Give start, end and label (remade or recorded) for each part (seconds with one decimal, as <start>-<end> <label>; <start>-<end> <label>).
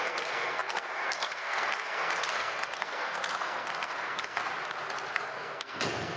0.0-4.4 remade; 4.4-5.1 recorded; 5.1-6.2 remade